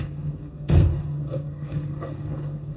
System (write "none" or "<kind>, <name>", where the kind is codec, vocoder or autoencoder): codec, SNAC